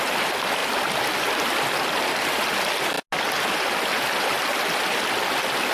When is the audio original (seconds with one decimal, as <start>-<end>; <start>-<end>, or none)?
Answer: 0.0-5.7